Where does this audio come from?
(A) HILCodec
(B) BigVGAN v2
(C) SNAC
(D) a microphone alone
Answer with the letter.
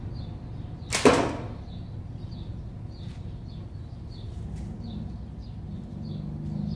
D